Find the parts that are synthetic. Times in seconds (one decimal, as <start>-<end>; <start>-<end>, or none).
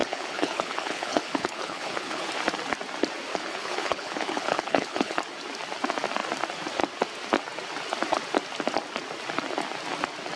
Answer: 0.0-2.3; 3.3-5.2